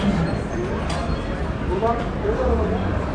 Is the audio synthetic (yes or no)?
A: no